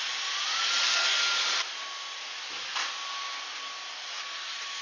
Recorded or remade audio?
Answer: recorded